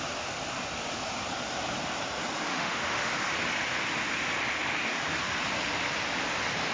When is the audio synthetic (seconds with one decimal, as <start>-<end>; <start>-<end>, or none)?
2.5-3.1